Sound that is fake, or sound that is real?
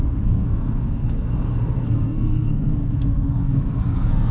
fake